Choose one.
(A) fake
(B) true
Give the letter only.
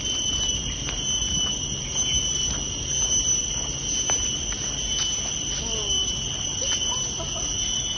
B